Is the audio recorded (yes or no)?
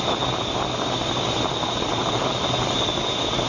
yes